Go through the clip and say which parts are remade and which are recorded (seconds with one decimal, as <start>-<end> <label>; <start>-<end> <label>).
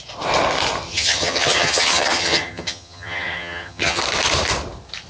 0.0-0.9 recorded; 0.9-4.0 remade; 4.0-5.1 recorded